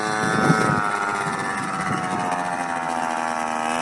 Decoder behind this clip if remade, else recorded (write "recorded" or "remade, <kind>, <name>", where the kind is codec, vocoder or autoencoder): recorded